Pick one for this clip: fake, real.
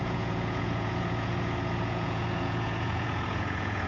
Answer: fake